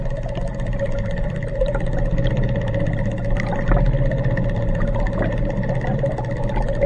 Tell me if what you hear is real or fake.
real